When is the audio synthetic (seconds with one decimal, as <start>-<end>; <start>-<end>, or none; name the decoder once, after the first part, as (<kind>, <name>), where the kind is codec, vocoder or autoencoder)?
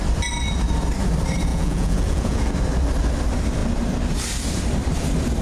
1.5-2.5 (vocoder, Vocos)